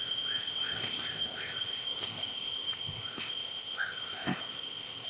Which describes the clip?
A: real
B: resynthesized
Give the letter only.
B